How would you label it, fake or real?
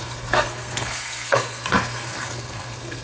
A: fake